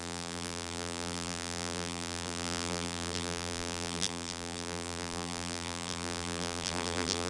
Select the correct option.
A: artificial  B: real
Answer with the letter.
A